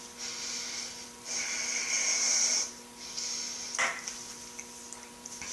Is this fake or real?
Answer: real